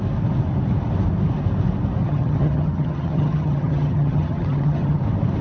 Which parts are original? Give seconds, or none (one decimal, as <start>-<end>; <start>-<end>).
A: 0.0-2.0; 5.0-5.4